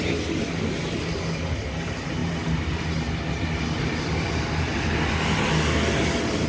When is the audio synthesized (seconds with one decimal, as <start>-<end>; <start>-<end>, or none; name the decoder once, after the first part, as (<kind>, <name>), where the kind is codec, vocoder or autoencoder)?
none